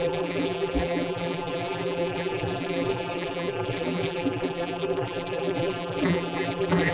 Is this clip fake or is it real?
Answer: fake